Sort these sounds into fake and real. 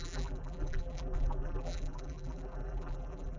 fake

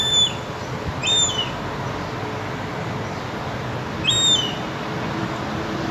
real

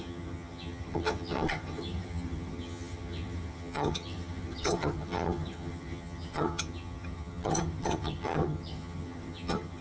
fake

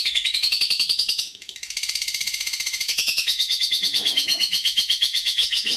fake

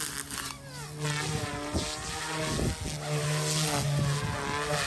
real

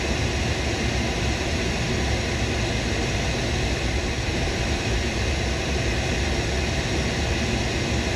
real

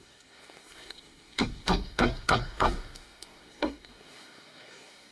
fake